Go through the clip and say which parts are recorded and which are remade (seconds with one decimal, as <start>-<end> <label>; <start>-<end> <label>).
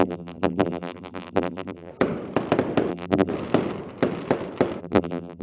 0.0-1.9 remade; 1.9-2.9 recorded; 2.9-3.3 remade; 3.3-4.8 recorded; 4.8-5.4 remade